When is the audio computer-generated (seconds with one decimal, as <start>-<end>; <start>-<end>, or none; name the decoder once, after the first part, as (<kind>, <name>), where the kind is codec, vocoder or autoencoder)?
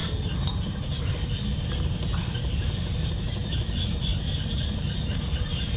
0.0-1.1 (vocoder, BigVGAN v2); 4.1-4.6